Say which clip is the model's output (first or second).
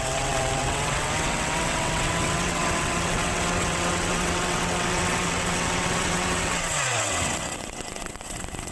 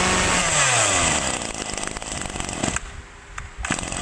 first